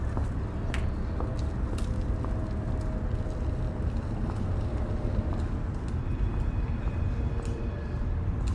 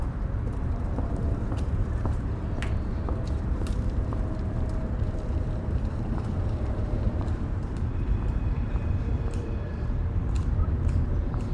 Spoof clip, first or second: second